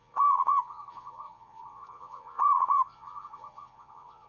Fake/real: fake